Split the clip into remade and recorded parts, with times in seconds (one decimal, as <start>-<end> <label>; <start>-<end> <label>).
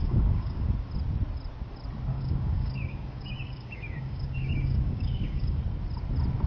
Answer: 0.0-0.7 remade; 0.7-2.1 recorded; 2.1-5.6 remade; 5.6-6.5 recorded